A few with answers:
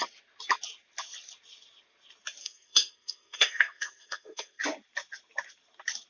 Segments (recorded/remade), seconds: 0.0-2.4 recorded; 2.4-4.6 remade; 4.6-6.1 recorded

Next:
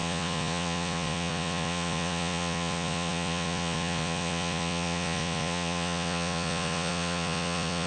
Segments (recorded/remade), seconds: 0.0-7.9 remade

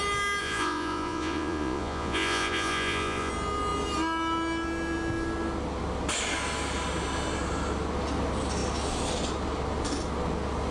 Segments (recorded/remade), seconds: 0.0-0.4 recorded; 0.4-3.3 remade; 3.3-10.7 recorded

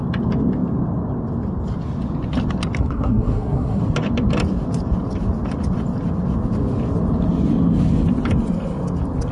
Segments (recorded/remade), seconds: 0.0-2.8 recorded; 2.8-3.8 remade; 3.8-9.3 recorded

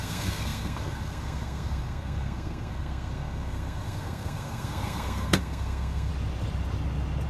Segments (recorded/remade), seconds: 0.0-6.1 remade; 6.1-7.3 recorded

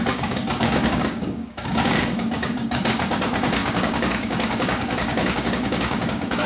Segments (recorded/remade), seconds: 0.0-6.5 remade

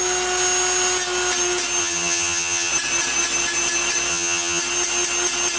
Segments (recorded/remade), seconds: 0.0-1.8 recorded; 1.8-2.7 remade; 2.7-4.1 recorded; 4.1-4.6 remade; 4.6-5.6 recorded

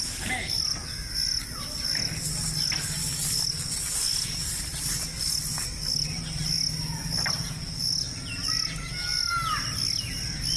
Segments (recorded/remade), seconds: 0.0-10.6 recorded